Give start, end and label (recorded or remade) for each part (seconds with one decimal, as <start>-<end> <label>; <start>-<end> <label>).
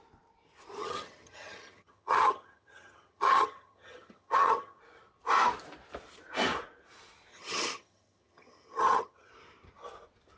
0.0-0.8 recorded; 0.8-4.8 remade; 4.8-7.3 recorded; 7.3-9.3 remade; 9.3-10.4 recorded